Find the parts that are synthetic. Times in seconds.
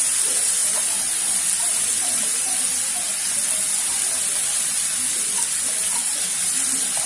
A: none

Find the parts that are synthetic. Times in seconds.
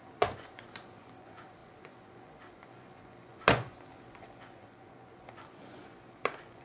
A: 0.0-6.6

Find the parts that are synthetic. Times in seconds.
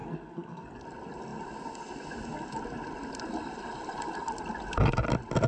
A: 0.0-0.8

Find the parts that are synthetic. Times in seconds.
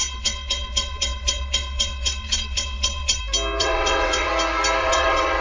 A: 0.0-3.2; 3.6-4.3; 4.8-5.4